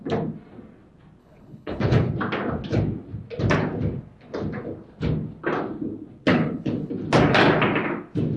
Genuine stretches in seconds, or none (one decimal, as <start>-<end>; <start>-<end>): 0.0-1.2; 2.1-6.3; 6.9-8.4